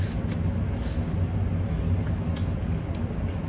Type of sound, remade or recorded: recorded